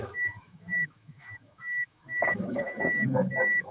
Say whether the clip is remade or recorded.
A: remade